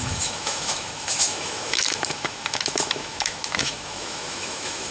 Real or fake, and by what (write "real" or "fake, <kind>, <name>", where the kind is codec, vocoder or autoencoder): fake, autoencoder, DAC-VAE